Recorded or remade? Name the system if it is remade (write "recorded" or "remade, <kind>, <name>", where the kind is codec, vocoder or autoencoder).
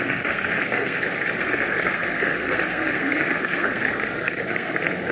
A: remade, codec, SNAC